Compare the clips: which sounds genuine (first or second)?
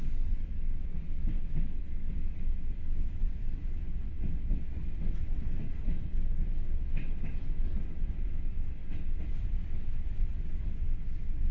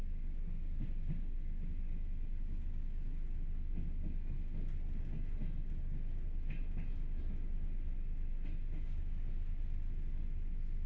second